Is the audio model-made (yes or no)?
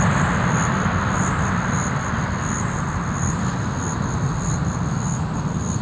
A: no